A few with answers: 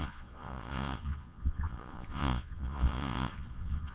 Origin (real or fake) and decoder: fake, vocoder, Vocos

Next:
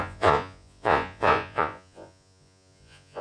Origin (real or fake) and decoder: fake, vocoder, Vocos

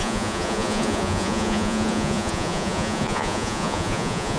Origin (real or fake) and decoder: fake, vocoder, Vocos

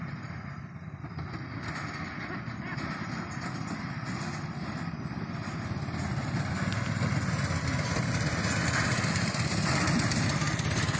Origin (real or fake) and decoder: fake, vocoder, BigVGAN v2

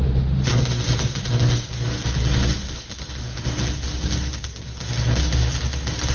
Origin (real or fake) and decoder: real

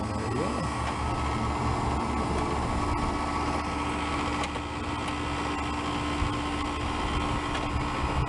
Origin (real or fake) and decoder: real